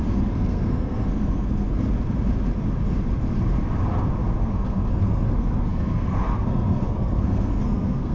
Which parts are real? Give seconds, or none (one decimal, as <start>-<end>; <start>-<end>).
1.7-4.4